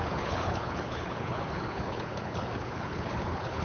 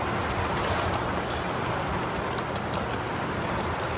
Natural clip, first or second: second